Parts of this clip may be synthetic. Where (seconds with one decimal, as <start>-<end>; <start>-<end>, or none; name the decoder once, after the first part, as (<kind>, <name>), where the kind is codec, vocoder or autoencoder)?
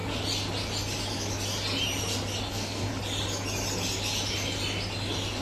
2.5-2.9 (codec, SNAC)